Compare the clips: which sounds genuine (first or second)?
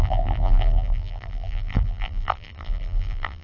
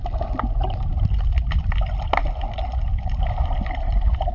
second